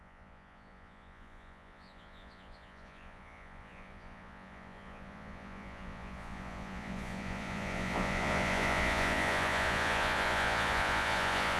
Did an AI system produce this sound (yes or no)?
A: yes